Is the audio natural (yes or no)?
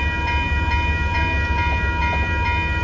yes